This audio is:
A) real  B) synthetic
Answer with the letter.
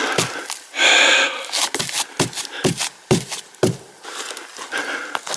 A